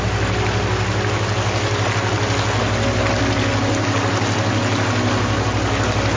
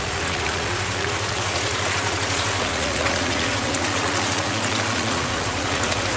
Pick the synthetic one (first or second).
second